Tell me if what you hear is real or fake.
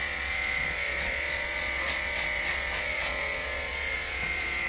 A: fake